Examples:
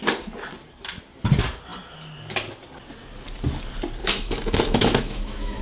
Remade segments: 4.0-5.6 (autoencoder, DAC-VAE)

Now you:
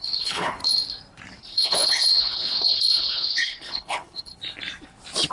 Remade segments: 0.0-0.6 (codec, HILCodec); 1.4-4.3

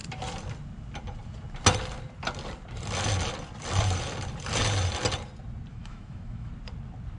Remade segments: 5.7-6.5 (autoencoder, DAC-VAE)

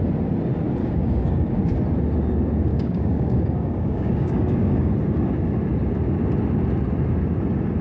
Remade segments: 0.8-1.6 (codec, DAC); 2.7-4.9

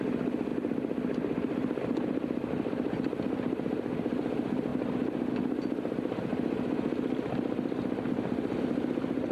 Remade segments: 0.5-2.5 (vocoder, BigVGAN v2); 6.3-8.6

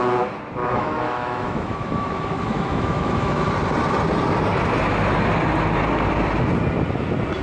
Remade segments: 0.6-3.5 (autoencoder, DAC-VAE)